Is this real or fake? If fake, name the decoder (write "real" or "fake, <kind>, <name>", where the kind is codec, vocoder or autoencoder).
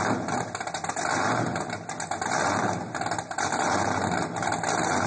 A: real